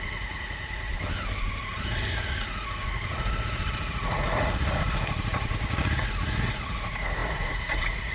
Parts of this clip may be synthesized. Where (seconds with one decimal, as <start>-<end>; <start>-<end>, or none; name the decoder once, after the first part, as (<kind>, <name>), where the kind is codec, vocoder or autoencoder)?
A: 0.0-0.9 (vocoder, Vocos); 1.6-8.1